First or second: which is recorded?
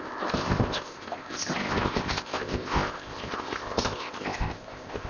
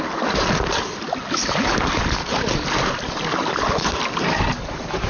second